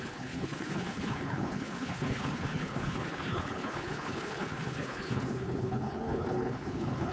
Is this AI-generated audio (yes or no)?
yes